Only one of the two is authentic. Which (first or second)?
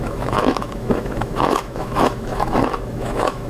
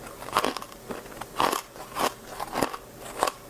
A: second